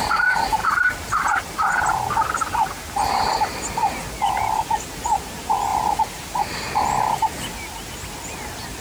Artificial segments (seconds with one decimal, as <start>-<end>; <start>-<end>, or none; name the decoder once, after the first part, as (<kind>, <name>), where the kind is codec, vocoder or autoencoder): 0.6-1.7 (vocoder, BigVGAN v2)